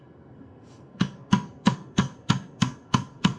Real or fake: fake